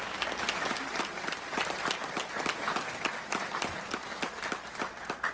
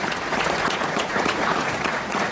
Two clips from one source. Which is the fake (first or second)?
second